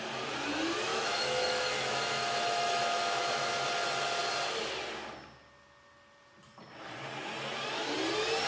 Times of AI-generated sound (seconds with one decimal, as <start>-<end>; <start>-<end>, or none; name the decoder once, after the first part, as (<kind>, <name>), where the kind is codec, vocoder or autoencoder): 0.9-3.7 (autoencoder, DAC-VAE)

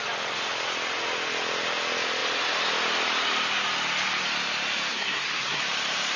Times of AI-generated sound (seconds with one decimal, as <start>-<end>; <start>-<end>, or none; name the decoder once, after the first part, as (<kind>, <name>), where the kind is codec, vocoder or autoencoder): 4.9-5.6 (codec, SNAC)

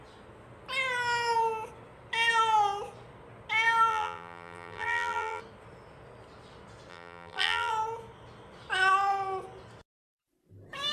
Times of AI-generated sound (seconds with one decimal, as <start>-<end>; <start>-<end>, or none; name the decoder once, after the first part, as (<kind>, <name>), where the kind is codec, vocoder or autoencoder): 3.9-5.4 (vocoder, BigVGAN v2); 6.9-7.7

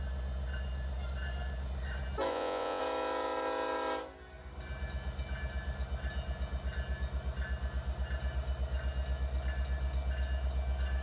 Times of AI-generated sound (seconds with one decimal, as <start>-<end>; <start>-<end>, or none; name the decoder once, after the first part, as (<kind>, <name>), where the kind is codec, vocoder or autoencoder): 2.3-2.8 (vocoder, Vocos)

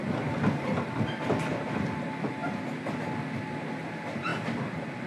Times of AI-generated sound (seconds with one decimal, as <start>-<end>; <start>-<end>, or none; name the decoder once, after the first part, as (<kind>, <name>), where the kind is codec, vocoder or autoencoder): none

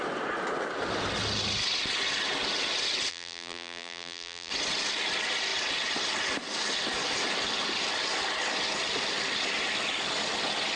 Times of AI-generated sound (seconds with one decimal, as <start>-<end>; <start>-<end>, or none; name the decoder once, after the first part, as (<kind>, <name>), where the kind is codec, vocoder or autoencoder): 3.1-4.5 (vocoder, BigVGAN v2)